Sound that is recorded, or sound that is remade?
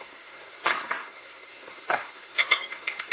remade